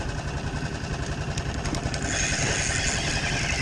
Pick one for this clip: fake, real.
real